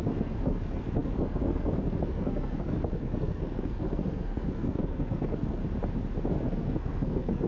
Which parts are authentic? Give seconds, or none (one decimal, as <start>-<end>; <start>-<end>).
5.6-6.3

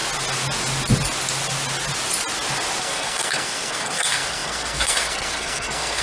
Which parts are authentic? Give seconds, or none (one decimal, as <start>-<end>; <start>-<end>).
0.0-2.8

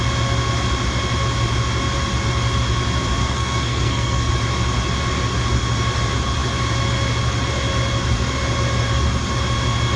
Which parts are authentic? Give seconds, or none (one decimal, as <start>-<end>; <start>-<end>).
0.0-3.2; 4.3-10.0

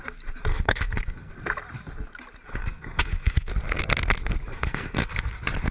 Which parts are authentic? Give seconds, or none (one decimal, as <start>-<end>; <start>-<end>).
0.0-0.5; 1.3-2.5; 3.5-4.5; 5.3-5.7

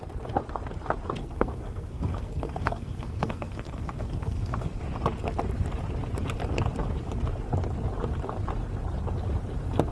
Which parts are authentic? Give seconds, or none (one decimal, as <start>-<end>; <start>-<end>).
0.0-1.2; 4.8-9.9